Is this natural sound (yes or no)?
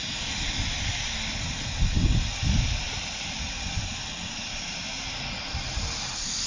yes